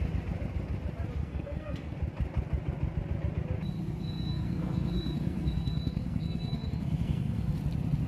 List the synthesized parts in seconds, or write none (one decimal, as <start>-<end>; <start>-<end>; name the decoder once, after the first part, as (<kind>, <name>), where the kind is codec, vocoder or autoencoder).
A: 1.2-2.0 (codec, SNAC); 4.0-7.6